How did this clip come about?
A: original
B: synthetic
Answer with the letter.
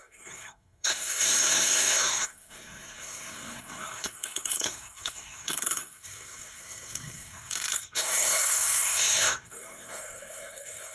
B